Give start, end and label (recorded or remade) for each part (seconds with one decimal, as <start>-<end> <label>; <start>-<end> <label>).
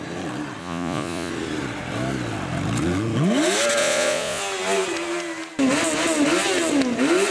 0.0-0.6 recorded; 0.6-1.3 remade; 1.3-3.8 recorded; 3.8-4.4 remade; 4.4-7.3 recorded